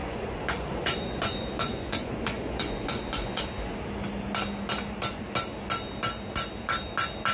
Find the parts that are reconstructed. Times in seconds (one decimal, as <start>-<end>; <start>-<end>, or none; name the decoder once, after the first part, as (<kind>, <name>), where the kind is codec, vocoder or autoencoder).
0.0-3.4 (vocoder, Vocos)